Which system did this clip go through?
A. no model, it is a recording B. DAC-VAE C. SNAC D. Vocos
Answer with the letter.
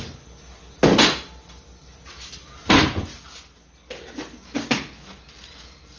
A